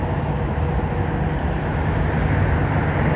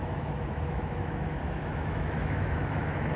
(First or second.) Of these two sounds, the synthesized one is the second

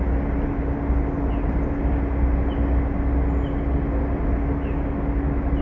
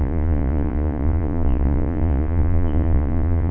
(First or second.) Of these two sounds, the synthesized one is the second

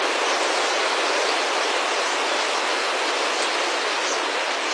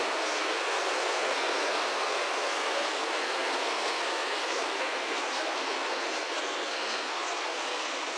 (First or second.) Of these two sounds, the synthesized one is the second